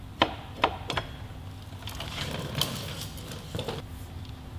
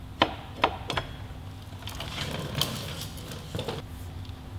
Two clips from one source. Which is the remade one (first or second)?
first